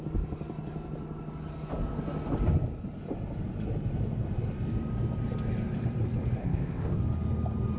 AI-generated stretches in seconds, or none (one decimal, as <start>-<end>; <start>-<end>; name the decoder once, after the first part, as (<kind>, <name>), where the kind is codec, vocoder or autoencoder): 6.4-7.0 (codec, ZipCodec)